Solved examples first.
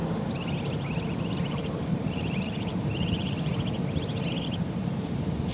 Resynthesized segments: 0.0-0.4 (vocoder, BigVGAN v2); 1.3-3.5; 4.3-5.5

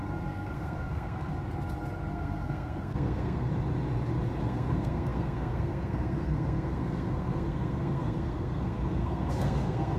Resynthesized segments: 0.0-1.3 (codec, SNAC); 2.1-3.5; 4.4-10.0

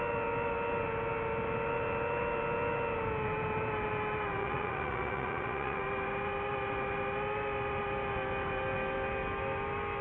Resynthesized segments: 4.4-5.8 (vocoder, Vocos)

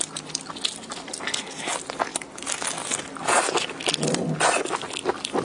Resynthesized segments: none

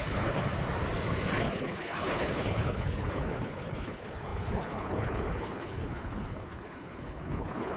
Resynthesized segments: 0.0-0.5 (codec, HILCodec); 1.4-7.8